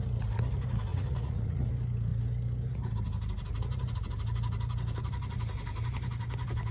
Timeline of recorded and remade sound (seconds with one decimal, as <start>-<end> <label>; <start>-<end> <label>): 0.0-0.9 recorded; 0.9-1.7 remade; 1.7-6.7 recorded

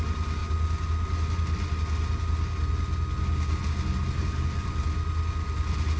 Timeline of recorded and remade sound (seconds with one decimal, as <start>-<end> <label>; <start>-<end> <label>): 0.0-6.0 recorded